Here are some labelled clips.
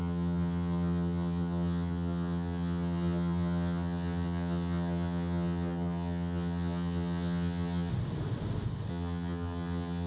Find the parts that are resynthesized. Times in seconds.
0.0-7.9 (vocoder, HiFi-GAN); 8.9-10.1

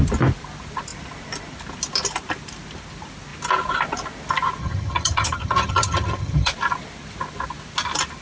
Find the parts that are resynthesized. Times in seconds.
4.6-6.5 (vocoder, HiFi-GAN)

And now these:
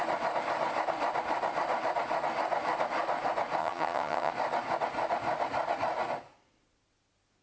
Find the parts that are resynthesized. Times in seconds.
3.6-4.3 (vocoder, HiFi-GAN)

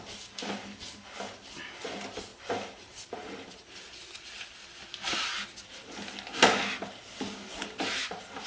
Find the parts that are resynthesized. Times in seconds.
none

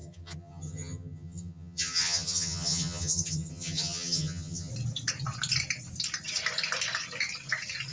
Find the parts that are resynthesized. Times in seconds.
0.0-4.7 (vocoder, HiFi-GAN)

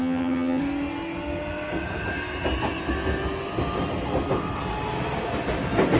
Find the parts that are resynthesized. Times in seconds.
0.0-0.6 (vocoder, HiFi-GAN)